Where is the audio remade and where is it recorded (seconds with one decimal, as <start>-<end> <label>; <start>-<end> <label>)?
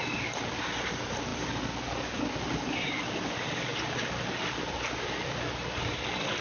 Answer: 0.0-6.4 recorded